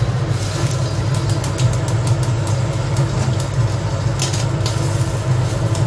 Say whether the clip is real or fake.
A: real